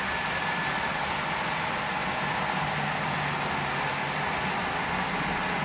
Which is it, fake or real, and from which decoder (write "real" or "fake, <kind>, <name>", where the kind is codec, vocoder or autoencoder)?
real